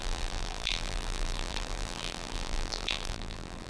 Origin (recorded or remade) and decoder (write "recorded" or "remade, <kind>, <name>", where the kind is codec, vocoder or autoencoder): remade, vocoder, BigVGAN v2